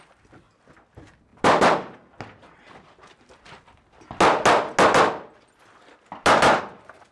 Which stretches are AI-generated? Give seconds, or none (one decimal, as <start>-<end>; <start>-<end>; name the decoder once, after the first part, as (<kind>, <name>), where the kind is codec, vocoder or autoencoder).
none